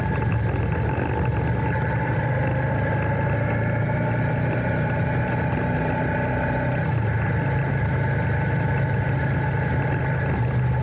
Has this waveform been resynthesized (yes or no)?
no